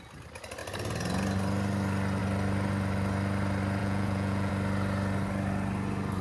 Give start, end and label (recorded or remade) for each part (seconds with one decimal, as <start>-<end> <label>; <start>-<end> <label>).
0.0-3.8 recorded; 3.8-4.5 remade; 4.5-6.2 recorded